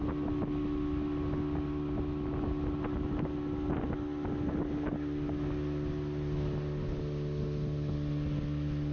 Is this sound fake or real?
real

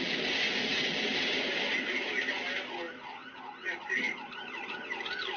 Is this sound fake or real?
real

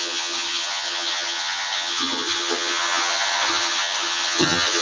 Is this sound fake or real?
fake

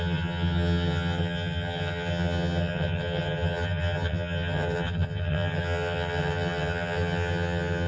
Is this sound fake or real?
fake